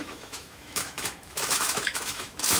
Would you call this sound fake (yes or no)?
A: yes